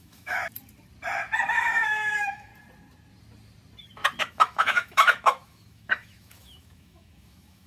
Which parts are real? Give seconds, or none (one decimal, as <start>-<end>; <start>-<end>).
0.4-1.5; 2.5-4.2